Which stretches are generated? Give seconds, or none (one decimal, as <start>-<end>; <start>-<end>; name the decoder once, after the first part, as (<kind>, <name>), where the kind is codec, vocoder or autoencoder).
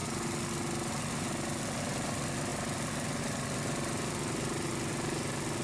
none